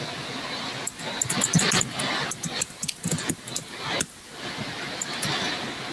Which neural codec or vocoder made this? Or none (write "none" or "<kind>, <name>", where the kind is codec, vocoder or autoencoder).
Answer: none